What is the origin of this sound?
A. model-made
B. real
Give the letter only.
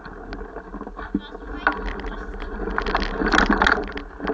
B